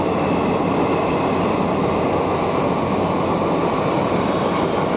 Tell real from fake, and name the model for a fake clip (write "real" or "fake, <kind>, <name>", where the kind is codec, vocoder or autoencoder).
real